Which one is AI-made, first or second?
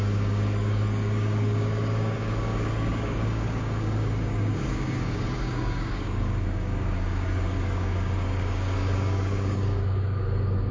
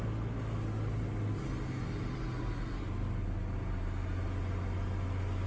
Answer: first